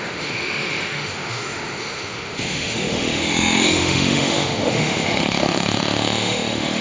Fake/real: fake